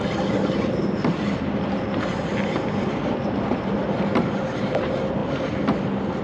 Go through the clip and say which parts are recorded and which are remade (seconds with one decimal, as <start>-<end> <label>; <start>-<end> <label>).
0.0-6.2 recorded